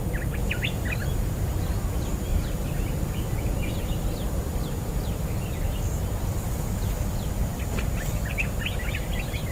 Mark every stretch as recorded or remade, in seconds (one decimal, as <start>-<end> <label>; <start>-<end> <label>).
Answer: 0.0-2.3 recorded; 2.3-2.9 remade; 2.9-9.5 recorded